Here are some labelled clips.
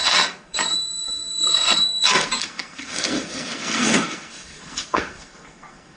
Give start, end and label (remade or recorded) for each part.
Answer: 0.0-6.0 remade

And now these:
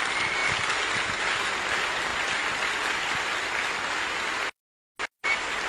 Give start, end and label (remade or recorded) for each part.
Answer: 0.0-5.7 recorded

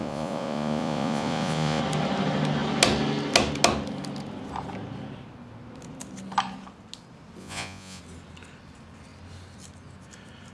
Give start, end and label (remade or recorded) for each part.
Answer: 0.0-1.8 remade; 1.8-7.4 recorded; 7.4-8.0 remade; 8.0-10.5 recorded

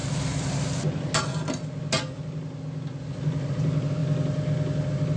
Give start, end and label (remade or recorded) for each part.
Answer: 0.0-5.2 recorded

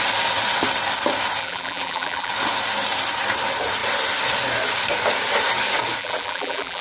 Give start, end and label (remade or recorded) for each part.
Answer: 0.0-1.4 recorded; 1.4-2.3 remade; 2.3-6.0 recorded; 6.0-6.8 remade